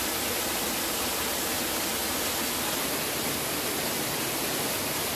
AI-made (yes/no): no